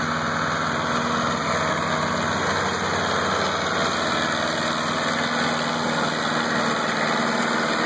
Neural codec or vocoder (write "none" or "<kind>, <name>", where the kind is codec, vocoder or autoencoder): none